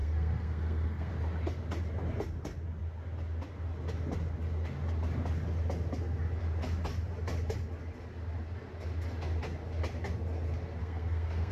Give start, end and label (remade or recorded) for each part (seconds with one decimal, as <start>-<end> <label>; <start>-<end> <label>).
0.0-1.1 remade; 1.1-10.8 recorded; 10.8-11.5 remade